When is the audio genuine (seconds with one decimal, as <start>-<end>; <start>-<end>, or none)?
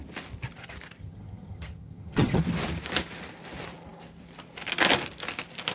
0.0-1.0; 2.4-5.7